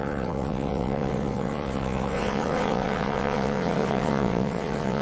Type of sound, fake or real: fake